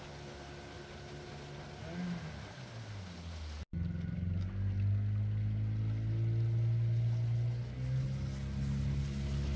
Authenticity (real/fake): real